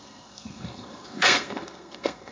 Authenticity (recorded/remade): remade